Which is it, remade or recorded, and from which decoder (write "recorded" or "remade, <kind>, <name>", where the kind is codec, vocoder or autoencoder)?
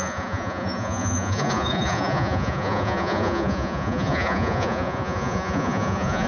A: remade, vocoder, Vocos